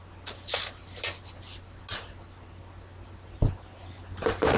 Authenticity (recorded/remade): recorded